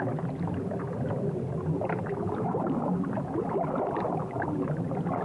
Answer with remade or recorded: recorded